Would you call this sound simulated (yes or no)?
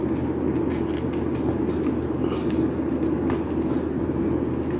no